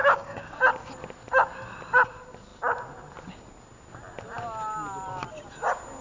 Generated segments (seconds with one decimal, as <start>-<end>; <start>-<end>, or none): 0.0-0.6